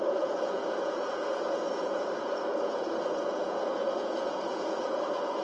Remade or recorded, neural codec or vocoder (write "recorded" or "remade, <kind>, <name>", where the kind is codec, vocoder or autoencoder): remade, vocoder, Vocos